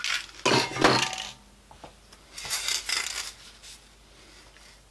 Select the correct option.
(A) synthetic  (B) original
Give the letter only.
B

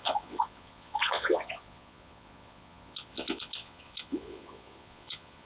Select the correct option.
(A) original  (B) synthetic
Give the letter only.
B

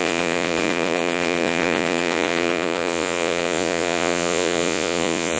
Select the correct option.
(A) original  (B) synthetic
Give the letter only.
B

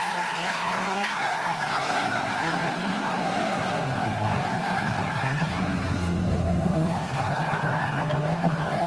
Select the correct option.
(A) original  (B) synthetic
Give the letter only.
B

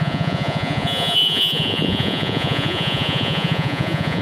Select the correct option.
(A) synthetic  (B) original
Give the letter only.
A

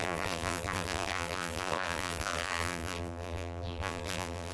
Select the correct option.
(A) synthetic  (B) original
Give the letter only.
A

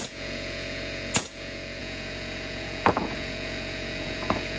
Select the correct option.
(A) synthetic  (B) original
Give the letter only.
A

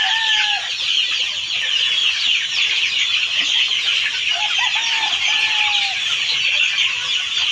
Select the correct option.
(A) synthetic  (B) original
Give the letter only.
B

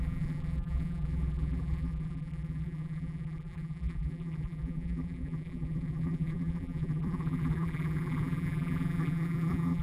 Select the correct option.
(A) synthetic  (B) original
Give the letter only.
A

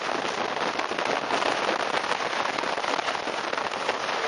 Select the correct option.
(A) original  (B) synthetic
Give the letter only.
A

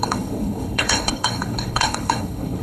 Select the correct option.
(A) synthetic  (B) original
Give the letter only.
A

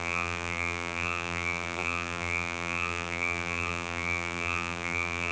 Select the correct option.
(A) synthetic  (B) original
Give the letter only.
A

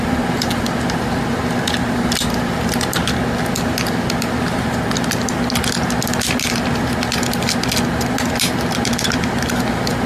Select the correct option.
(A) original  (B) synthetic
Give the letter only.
A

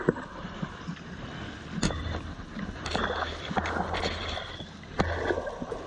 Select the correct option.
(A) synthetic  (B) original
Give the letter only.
B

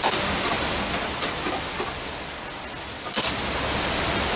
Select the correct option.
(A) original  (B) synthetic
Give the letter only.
A